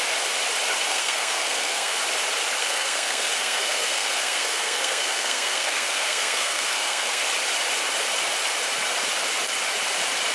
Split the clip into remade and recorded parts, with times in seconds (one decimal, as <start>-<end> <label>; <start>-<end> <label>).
0.0-0.9 recorded; 0.9-2.0 remade; 2.0-2.6 recorded; 2.6-7.2 remade; 7.2-10.3 recorded